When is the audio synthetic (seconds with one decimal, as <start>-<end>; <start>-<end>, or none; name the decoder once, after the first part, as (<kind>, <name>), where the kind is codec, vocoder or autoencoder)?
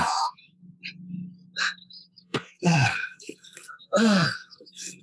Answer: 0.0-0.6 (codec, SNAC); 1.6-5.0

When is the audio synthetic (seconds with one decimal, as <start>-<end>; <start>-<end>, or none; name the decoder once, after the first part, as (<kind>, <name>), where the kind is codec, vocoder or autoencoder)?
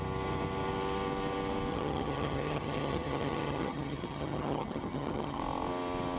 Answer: 1.7-5.4 (vocoder, HiFi-GAN)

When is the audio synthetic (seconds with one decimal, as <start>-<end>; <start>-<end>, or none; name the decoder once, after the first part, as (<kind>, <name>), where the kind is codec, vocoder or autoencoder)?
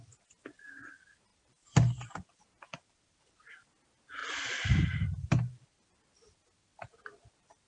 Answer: 1.3-3.5 (vocoder, BigVGAN v2); 4.2-6.0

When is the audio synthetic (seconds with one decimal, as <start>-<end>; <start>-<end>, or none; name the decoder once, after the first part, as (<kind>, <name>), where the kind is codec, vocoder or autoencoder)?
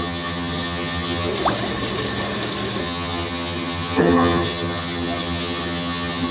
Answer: 0.0-1.3 (vocoder, HiFi-GAN); 2.8-6.3